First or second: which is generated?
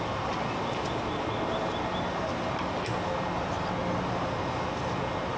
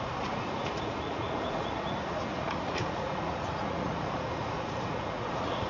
second